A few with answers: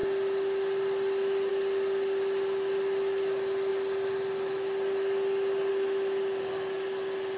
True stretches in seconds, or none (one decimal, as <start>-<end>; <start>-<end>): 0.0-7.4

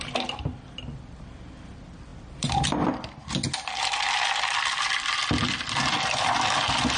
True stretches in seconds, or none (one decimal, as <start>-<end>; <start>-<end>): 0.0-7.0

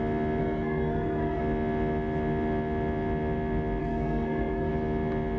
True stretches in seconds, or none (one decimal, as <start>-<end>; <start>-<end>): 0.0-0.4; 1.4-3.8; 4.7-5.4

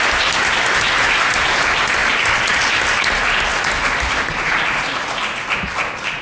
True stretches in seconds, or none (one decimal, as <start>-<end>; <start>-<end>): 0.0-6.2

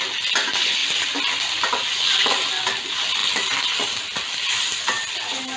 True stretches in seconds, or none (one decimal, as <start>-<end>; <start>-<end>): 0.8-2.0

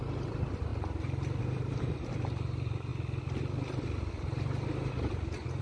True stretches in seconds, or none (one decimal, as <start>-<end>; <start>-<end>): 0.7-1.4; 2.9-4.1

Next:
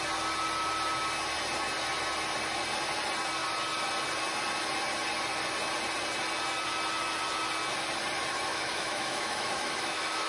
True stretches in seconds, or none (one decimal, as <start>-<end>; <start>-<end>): 0.0-8.5